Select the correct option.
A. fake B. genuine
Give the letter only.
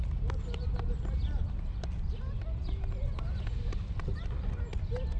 B